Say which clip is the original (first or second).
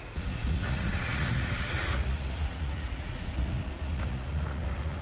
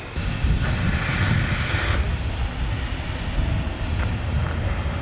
second